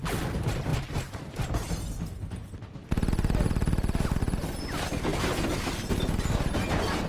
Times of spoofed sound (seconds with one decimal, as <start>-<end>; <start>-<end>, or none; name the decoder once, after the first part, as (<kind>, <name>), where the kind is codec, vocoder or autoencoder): none